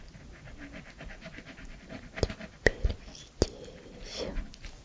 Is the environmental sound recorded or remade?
recorded